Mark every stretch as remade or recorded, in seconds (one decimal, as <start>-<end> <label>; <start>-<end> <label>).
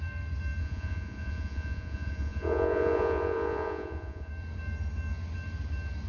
0.0-0.6 recorded; 0.6-4.3 remade; 4.3-6.1 recorded